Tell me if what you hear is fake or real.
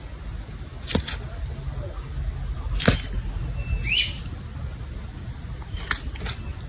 real